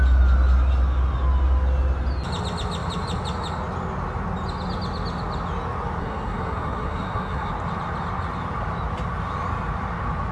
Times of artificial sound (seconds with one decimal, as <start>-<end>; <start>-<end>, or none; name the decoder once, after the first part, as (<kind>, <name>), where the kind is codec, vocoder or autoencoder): 6.0-7.5 (codec, SNAC)